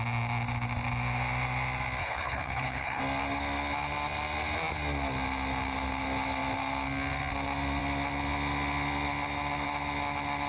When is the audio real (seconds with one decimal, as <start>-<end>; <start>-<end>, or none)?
0.0-2.0; 3.0-10.5